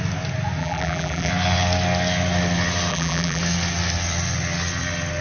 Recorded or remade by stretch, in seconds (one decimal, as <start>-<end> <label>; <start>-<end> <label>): 0.0-0.6 recorded; 0.6-1.3 remade; 1.3-2.9 recorded; 2.9-3.4 remade; 3.4-5.2 recorded

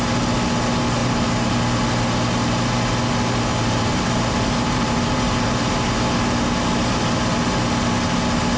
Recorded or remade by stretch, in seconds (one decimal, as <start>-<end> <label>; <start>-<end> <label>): 0.0-1.0 recorded; 1.0-1.6 remade; 1.6-3.5 recorded; 3.5-5.4 remade; 5.4-8.6 recorded